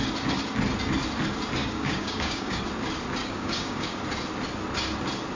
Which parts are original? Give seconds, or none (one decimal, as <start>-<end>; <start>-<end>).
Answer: 0.0-1.6; 2.6-3.2; 4.0-5.4

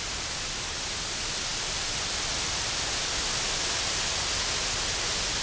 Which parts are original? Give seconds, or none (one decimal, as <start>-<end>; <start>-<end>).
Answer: 0.0-5.4

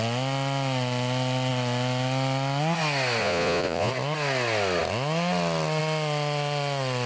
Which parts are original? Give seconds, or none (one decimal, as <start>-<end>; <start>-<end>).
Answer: 0.0-3.2; 3.9-7.1

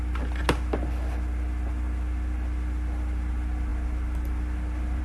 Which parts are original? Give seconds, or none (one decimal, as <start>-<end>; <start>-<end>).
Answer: 0.0-5.0

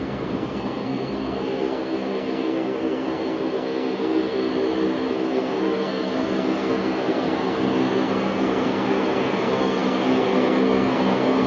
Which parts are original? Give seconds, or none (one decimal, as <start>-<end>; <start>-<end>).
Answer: 4.5-5.1

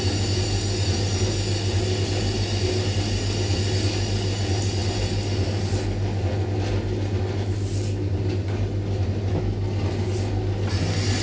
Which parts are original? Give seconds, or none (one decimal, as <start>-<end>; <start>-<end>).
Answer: 0.0-11.2

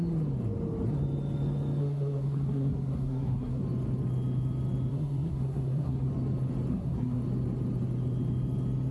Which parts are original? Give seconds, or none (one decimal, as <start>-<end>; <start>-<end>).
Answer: 0.0-1.8; 3.6-4.9; 6.1-6.7; 7.2-8.9

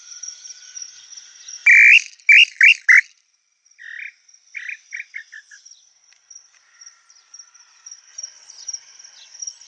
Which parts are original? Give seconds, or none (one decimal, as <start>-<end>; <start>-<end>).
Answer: 0.0-9.7